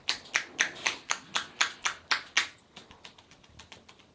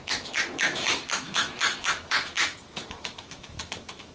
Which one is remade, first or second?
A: second